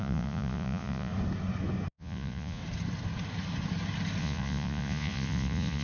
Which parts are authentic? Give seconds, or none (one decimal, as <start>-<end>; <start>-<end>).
1.1-1.9; 2.6-4.2